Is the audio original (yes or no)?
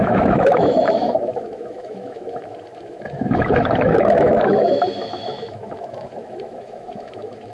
no